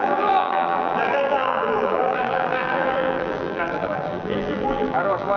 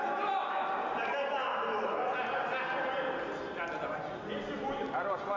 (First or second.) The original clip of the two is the second